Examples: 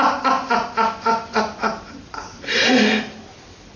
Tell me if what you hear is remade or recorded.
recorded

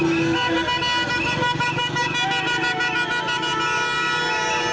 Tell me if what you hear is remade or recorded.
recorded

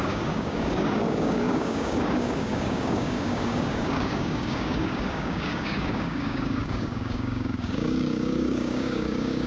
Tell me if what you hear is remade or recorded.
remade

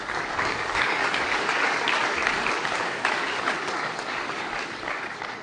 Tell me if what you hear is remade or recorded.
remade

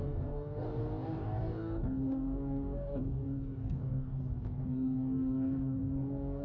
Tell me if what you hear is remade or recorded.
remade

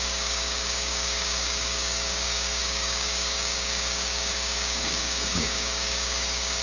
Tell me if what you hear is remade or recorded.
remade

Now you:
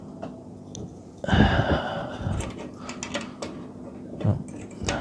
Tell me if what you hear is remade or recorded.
recorded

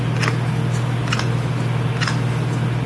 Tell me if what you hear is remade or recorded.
recorded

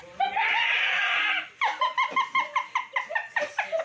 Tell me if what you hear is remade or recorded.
recorded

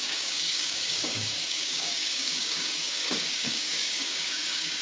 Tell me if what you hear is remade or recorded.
remade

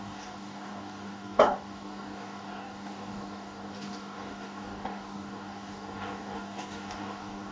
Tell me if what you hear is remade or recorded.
remade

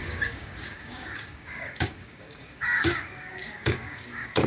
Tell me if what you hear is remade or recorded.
remade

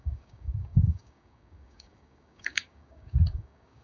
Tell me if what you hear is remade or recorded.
remade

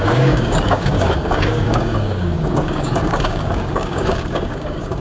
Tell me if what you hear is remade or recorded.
remade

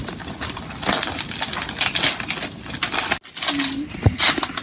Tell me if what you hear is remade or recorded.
recorded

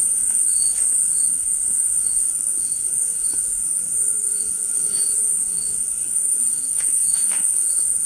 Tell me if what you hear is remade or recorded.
remade